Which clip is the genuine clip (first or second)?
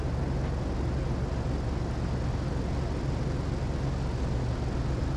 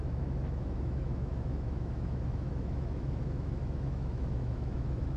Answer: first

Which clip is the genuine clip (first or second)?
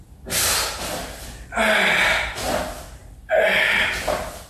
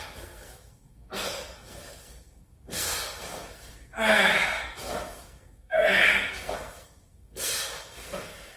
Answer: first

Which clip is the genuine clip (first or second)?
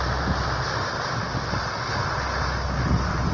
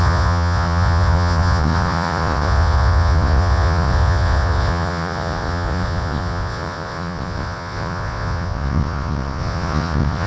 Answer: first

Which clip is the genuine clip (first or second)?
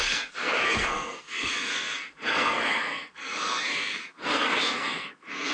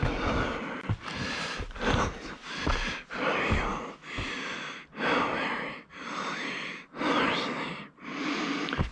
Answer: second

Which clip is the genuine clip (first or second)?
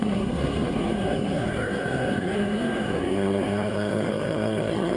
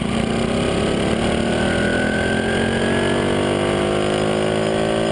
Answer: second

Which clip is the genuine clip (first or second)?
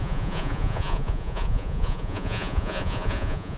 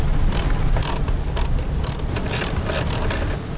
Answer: second